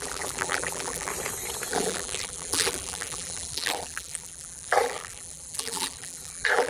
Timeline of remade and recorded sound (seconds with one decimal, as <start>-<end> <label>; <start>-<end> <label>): 0.0-1.1 remade; 1.1-1.7 recorded; 1.7-6.7 remade